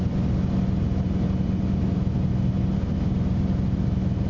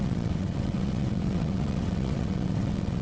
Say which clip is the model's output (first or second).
second